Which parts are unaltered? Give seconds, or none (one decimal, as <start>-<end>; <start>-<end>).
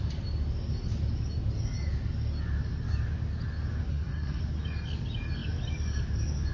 0.0-3.9; 4.4-6.5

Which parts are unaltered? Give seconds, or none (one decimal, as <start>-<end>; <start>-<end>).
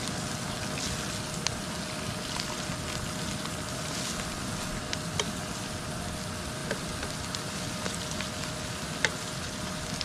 0.0-10.0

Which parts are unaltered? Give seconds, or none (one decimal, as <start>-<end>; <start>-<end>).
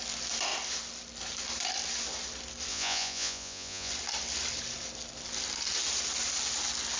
0.0-2.7; 3.9-7.0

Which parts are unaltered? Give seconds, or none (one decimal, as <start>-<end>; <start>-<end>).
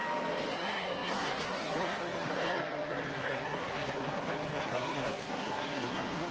0.0-0.5